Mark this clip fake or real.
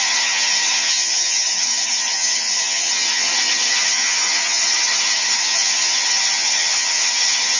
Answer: fake